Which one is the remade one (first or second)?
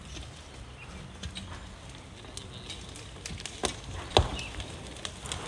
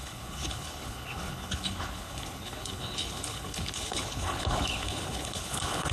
second